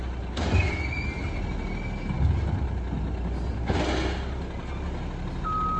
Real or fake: real